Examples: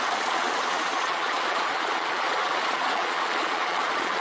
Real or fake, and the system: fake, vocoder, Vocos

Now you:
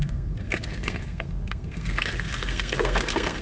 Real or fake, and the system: fake, codec, SNAC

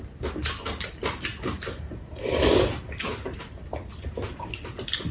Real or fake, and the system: real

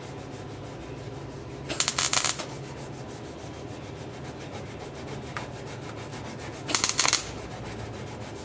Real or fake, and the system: real